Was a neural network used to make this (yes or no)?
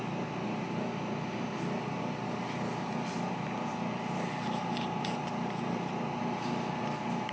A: no